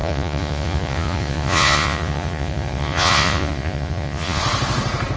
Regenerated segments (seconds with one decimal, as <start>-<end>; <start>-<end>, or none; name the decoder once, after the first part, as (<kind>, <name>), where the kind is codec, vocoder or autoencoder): 0.0-4.4 (vocoder, Vocos)